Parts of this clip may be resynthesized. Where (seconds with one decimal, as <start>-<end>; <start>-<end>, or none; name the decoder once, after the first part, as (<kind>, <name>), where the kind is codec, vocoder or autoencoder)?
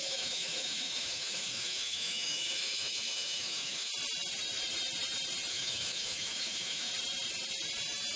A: 0.0-3.9 (autoencoder, DAC-VAE); 5.5-6.9